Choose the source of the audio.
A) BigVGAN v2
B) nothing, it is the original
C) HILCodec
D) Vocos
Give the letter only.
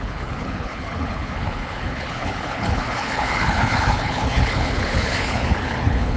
C